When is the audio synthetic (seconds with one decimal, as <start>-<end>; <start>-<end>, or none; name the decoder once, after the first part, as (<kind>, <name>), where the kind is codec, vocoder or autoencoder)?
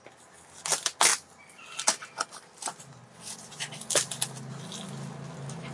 none